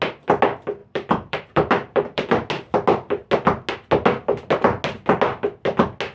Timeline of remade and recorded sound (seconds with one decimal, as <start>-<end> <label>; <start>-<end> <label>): 0.0-0.8 recorded; 0.8-2.5 remade; 2.5-6.1 recorded